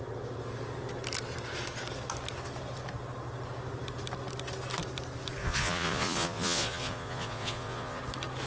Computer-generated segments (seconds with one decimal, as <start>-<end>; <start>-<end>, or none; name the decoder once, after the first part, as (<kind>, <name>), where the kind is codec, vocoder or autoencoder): 5.4-8.0 (vocoder, Vocos)